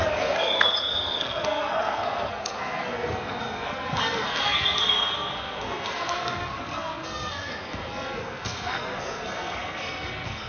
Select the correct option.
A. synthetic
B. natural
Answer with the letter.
A